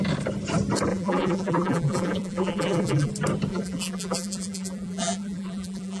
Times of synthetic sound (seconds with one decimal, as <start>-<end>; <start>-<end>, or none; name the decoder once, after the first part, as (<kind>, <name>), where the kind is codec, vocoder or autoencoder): 0.9-3.1 (vocoder, BigVGAN v2); 3.5-6.0